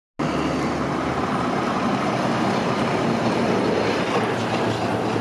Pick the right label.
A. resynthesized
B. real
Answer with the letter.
B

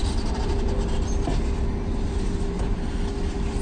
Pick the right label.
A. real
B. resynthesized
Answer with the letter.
A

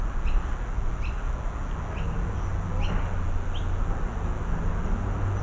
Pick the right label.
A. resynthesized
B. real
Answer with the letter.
B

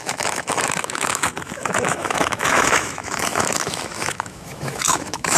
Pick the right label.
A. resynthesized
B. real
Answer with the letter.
A